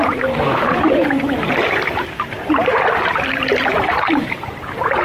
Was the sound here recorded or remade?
remade